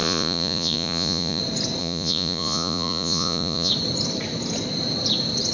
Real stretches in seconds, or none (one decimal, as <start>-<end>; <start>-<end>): 1.4-1.8; 3.7-5.5